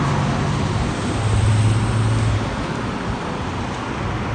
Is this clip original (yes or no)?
yes